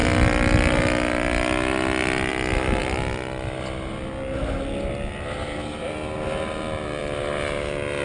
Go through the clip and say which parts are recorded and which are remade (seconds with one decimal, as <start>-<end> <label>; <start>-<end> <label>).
0.0-8.0 recorded

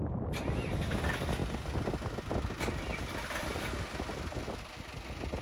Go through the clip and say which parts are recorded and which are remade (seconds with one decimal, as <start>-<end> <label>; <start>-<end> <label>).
0.0-5.4 recorded

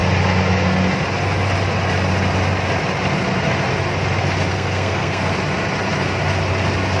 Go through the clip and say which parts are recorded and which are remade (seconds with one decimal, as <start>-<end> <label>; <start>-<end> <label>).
0.0-4.5 recorded; 4.5-5.3 remade; 5.3-7.0 recorded

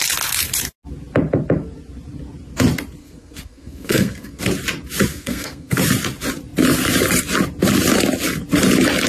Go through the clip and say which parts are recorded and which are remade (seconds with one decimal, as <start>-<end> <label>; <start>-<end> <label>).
0.0-3.0 recorded; 3.0-4.4 remade; 4.4-5.1 recorded; 5.1-5.8 remade; 5.8-9.1 recorded

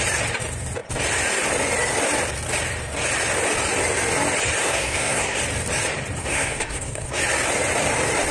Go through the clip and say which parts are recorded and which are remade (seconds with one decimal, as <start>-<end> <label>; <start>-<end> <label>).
0.0-4.6 recorded; 4.6-5.4 remade; 5.4-6.2 recorded; 6.2-7.2 remade; 7.2-8.3 recorded

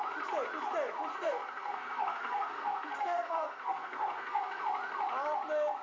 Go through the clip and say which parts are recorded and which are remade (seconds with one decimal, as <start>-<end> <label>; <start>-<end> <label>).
0.0-1.1 recorded; 1.1-4.6 remade; 4.6-5.8 recorded

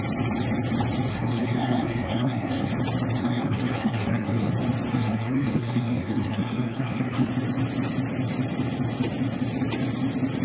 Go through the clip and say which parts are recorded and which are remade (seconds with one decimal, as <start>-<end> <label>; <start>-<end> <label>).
0.0-1.1 recorded; 1.1-2.7 remade; 2.7-3.2 recorded; 3.2-4.5 remade; 4.5-4.9 recorded; 4.9-7.3 remade; 7.3-10.4 recorded

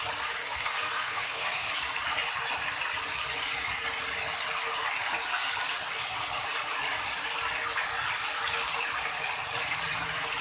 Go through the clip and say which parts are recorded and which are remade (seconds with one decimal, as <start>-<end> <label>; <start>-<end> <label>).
0.0-0.4 recorded; 0.4-1.7 remade; 1.7-10.4 recorded